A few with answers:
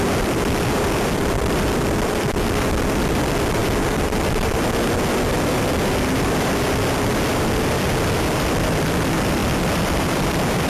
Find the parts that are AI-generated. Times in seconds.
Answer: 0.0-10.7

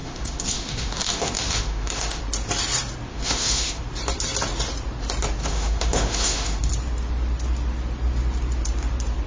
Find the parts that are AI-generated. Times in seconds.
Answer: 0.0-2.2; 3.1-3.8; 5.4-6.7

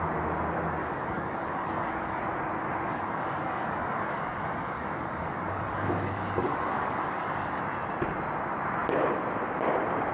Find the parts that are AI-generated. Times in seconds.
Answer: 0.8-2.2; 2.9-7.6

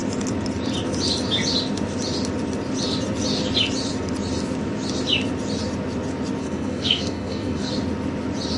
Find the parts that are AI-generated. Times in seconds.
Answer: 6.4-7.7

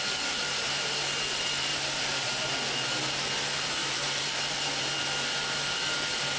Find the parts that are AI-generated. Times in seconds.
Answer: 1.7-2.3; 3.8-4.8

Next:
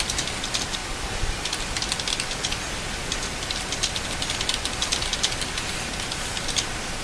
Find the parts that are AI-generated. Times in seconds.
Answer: 0.8-2.5

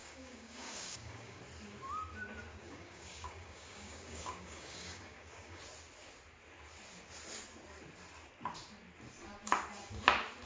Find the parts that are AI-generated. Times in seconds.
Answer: 0.0-1.4; 2.5-5.6

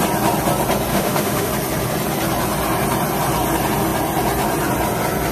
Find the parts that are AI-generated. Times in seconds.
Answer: 0.9-1.5